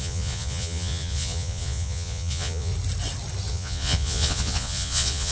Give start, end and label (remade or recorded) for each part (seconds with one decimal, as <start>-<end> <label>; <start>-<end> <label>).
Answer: 0.0-2.7 remade; 2.7-3.5 recorded; 3.5-5.3 remade